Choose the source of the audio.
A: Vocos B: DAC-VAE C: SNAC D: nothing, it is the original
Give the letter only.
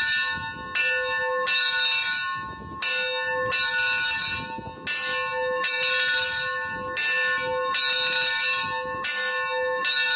D